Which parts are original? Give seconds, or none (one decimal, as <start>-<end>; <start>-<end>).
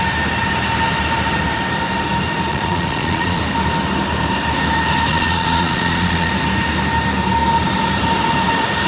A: 0.0-2.5; 3.4-5.1; 6.3-8.9